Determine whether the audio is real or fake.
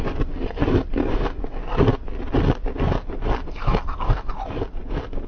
real